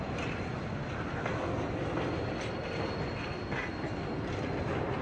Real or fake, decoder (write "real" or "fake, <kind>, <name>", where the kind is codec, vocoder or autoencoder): real